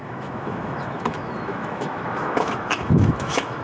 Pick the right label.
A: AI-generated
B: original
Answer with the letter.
A